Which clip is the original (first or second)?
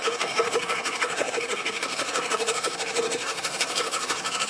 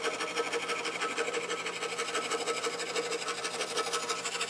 second